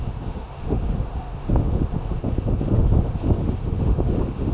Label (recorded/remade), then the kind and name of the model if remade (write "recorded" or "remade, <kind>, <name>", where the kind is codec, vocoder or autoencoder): remade, autoencoder, DAC-VAE